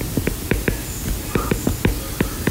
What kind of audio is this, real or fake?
real